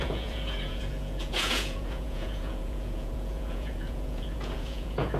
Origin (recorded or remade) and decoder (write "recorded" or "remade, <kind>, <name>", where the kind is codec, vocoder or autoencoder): remade, vocoder, Vocos